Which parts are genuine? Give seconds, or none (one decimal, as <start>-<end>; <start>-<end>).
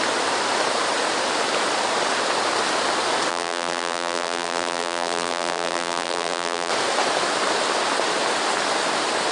0.0-3.3; 6.7-9.3